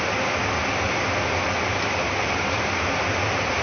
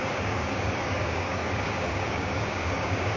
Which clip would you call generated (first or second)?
second